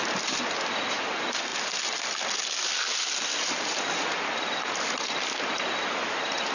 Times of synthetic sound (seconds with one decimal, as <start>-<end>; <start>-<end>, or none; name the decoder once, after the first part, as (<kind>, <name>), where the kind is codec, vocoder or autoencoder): none